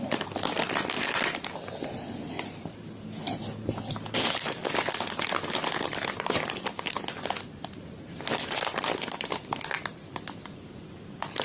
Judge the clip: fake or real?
real